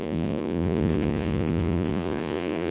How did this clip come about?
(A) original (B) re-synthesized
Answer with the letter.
B